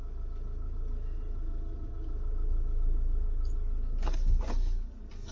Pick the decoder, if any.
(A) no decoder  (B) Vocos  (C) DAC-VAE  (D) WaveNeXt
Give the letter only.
A